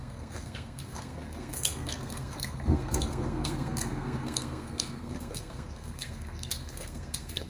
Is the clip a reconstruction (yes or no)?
yes